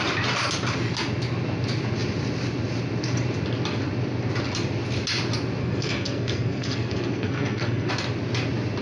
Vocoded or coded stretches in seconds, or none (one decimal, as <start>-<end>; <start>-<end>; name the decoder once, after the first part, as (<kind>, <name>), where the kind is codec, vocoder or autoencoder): 5.6-7.9 (codec, SNAC)

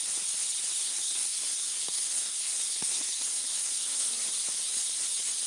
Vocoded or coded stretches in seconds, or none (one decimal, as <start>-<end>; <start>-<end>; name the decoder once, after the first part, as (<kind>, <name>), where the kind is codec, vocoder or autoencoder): 0.8-4.1 (codec, SNAC)